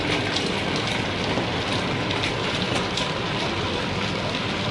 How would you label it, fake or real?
real